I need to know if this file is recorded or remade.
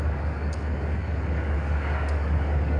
remade